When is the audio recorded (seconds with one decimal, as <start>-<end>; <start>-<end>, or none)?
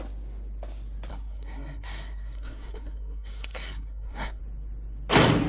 0.0-1.1; 4.4-5.5